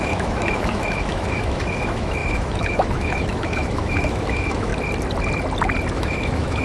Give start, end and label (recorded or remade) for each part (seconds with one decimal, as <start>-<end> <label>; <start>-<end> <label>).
0.0-4.7 remade; 4.7-5.9 recorded; 5.9-6.6 remade